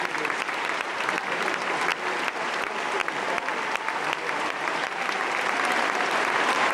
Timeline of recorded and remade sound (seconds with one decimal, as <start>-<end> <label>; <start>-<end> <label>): 0.0-1.9 remade; 1.9-2.4 recorded; 2.4-3.0 remade; 3.0-4.4 recorded; 4.4-6.7 remade

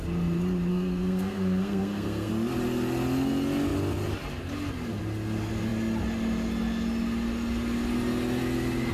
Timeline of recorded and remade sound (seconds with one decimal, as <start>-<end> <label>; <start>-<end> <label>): 0.0-0.7 recorded; 0.7-2.3 remade; 2.3-8.9 recorded

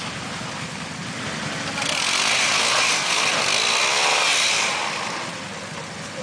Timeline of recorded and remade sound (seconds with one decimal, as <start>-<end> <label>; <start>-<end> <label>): 0.0-6.2 recorded